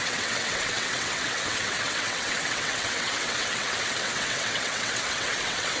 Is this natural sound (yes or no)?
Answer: no